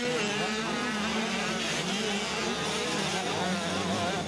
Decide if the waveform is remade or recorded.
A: recorded